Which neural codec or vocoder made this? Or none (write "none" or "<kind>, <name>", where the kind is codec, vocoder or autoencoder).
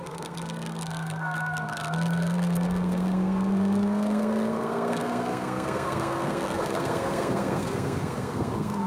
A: codec, SNAC